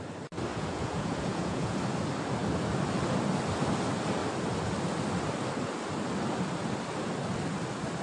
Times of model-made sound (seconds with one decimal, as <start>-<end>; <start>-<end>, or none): 0.5-1.8